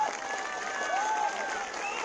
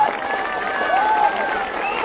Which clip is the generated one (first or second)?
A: second